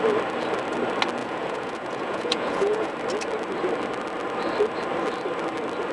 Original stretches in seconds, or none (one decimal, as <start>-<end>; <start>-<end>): 0.0-1.2; 2.9-5.9

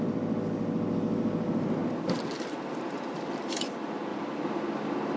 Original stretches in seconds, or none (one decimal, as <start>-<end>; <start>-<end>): 0.0-4.1; 4.6-5.2

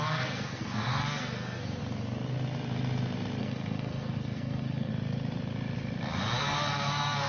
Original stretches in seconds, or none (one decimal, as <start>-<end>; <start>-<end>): 1.8-3.4; 4.9-6.4

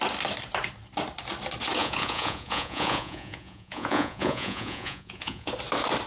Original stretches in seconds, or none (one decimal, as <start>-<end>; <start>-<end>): 0.0-1.8; 5.5-6.1

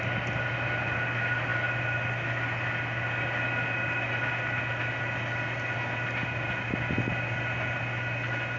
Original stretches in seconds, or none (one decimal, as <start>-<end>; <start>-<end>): 0.0-8.6